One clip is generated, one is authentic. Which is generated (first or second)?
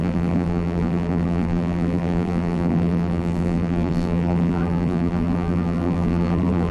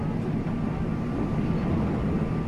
first